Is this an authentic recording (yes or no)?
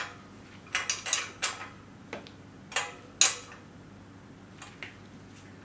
yes